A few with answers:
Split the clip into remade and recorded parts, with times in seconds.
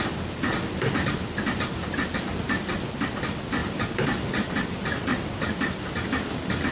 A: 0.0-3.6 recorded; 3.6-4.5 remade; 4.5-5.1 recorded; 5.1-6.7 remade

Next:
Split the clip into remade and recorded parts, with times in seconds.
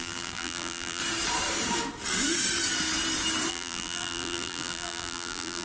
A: 0.0-1.0 remade; 1.0-3.5 recorded; 3.5-5.6 remade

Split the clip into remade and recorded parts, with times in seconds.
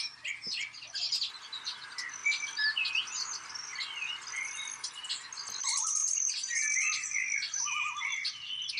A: 0.0-2.2 recorded; 2.2-2.9 remade; 2.9-3.7 recorded; 3.7-5.1 remade; 5.1-6.0 recorded; 6.0-6.6 remade; 6.6-8.8 recorded